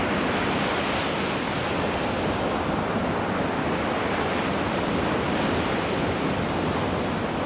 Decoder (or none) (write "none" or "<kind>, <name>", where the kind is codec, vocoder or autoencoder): none